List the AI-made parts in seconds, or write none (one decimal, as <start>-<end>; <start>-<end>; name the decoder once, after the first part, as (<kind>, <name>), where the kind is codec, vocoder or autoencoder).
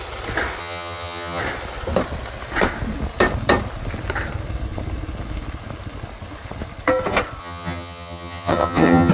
0.6-1.4 (vocoder, HiFi-GAN); 7.4-9.1